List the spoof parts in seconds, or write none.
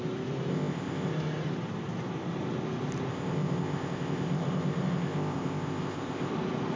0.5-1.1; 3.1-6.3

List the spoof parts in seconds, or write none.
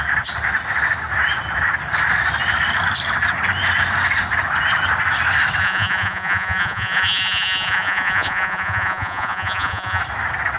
5.6-10.0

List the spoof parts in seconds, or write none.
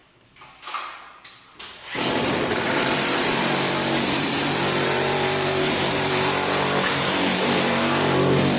2.2-8.6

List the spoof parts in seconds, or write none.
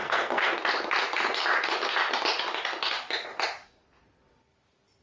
0.0-0.6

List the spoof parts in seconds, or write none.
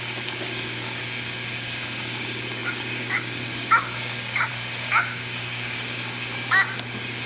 0.0-7.3